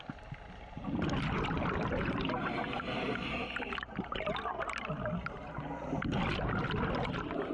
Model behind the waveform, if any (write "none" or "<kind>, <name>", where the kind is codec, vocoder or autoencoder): none